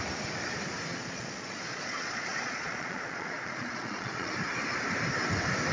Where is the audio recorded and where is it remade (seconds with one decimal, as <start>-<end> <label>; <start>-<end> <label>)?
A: 0.0-0.9 recorded; 0.9-4.3 remade; 4.3-5.7 recorded